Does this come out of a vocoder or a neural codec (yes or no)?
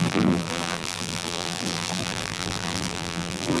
yes